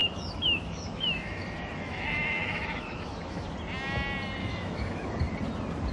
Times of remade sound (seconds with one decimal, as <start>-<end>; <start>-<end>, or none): 0.0-3.5; 4.4-5.2